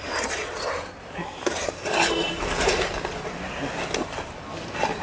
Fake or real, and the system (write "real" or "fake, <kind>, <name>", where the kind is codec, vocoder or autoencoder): real